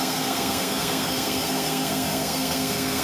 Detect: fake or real fake